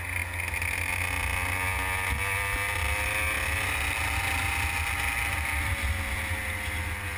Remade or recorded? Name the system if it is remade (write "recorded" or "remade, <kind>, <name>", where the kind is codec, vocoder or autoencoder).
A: recorded